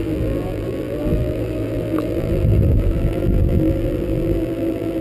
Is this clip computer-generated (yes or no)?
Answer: yes